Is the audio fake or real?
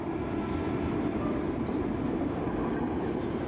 real